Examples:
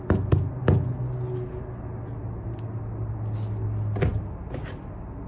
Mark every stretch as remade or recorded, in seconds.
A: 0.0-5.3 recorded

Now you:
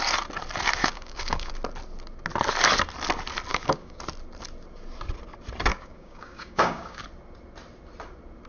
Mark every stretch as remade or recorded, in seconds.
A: 0.0-0.8 recorded; 0.8-1.5 remade; 1.5-3.5 recorded; 3.5-4.0 remade; 4.0-5.7 recorded; 5.7-7.0 remade; 7.0-8.5 recorded

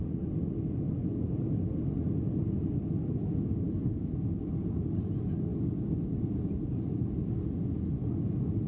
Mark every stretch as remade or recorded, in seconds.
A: 0.0-3.2 recorded; 3.2-3.7 remade; 3.7-6.9 recorded; 6.9-7.6 remade; 7.6-8.7 recorded

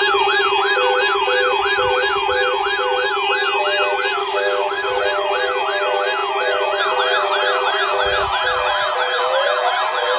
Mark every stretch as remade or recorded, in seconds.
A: 0.0-4.2 recorded; 4.2-5.0 remade; 5.0-10.2 recorded

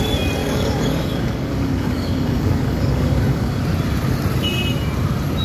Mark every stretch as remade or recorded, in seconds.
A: 0.0-0.4 recorded; 0.4-3.6 remade; 3.6-5.4 recorded